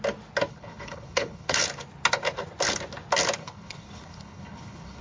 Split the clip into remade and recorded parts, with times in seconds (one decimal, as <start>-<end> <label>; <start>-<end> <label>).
0.0-0.5 recorded; 0.5-1.6 remade; 1.6-3.4 recorded; 3.4-5.0 remade